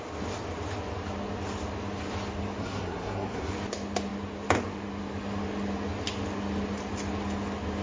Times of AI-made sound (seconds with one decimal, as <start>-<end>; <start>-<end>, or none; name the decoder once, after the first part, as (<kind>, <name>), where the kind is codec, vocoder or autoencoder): 2.6-3.5 (codec, SNAC)